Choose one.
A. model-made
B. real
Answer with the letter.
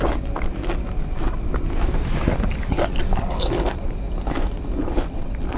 B